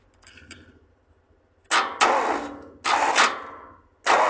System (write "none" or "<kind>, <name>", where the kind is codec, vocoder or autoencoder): none